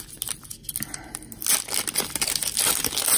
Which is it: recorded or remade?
recorded